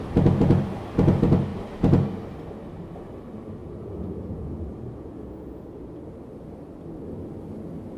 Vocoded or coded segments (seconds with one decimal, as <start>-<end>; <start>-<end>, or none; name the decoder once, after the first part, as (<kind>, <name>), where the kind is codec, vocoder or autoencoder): 3.6-6.0 (vocoder, Vocos)